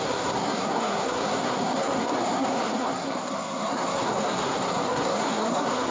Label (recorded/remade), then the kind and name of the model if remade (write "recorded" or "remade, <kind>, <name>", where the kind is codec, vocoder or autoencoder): remade, codec, SNAC